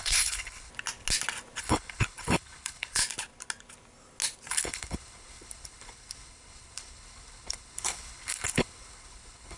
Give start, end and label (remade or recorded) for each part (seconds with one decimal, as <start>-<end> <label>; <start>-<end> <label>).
0.0-0.7 remade; 0.7-1.6 recorded; 1.6-3.0 remade; 3.0-4.5 recorded; 4.5-9.6 remade